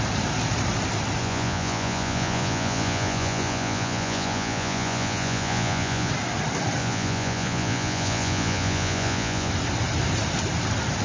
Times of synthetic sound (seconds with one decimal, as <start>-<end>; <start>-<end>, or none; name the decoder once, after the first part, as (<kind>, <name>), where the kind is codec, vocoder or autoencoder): 1.2-6.1 (vocoder, Vocos); 6.8-9.5